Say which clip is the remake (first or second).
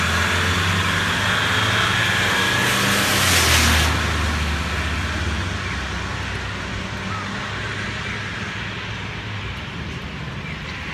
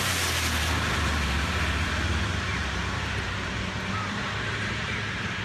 second